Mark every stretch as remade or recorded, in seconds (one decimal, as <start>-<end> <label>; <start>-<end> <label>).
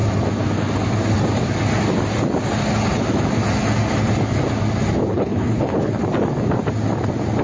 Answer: 0.0-5.1 recorded; 5.1-6.0 remade; 6.0-7.4 recorded